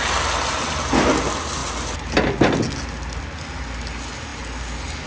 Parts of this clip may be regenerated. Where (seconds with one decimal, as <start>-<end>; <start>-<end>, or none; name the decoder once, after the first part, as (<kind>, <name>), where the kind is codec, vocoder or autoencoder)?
none